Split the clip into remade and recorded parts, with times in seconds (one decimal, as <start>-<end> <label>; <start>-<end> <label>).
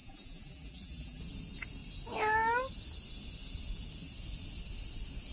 0.0-1.2 remade; 1.2-5.3 recorded